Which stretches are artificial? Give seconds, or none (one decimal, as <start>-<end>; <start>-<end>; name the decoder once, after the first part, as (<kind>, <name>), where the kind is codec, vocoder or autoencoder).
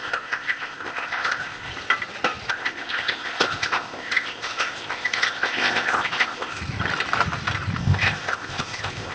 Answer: 0.0-1.7 (codec, ZipCodec); 2.5-6.6; 7.8-9.1